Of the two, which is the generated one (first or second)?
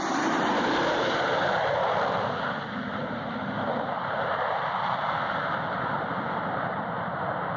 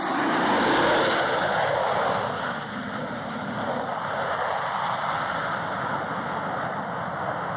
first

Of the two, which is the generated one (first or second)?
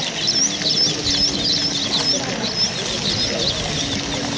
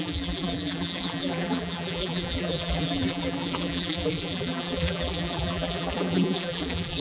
second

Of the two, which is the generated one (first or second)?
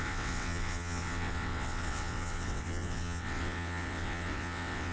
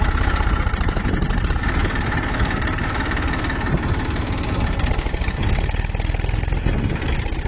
first